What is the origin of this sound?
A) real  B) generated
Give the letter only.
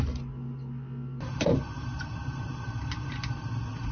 A